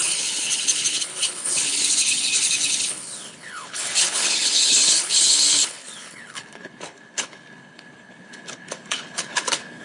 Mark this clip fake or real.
fake